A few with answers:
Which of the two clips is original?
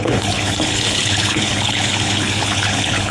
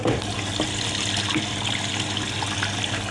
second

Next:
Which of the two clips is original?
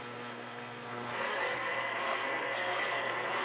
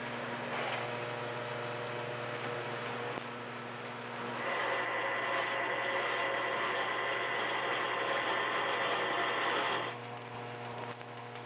second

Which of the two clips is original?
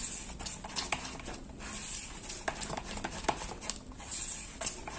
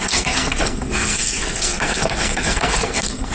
first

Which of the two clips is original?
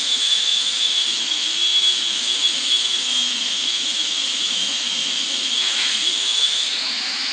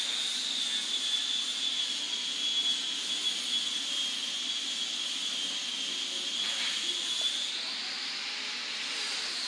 second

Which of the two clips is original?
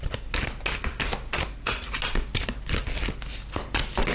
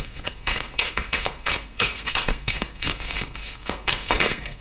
first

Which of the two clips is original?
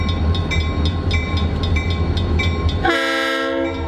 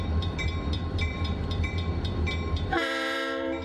first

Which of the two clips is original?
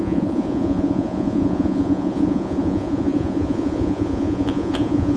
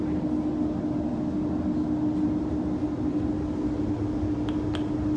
second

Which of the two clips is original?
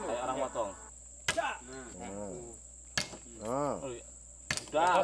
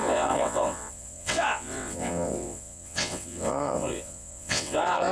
first